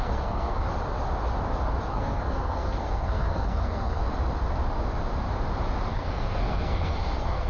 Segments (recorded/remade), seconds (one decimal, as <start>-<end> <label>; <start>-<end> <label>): 0.0-0.7 remade; 0.7-1.9 recorded; 1.9-4.0 remade; 4.0-5.9 recorded; 5.9-7.5 remade